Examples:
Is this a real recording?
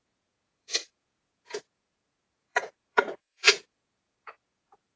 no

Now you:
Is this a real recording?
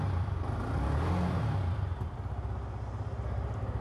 yes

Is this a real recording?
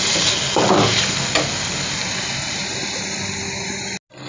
yes